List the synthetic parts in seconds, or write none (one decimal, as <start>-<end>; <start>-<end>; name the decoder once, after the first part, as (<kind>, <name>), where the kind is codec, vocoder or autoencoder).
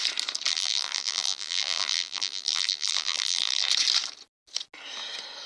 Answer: 0.5-3.7 (vocoder, BigVGAN v2)